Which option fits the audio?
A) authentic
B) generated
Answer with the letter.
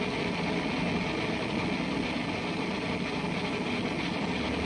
A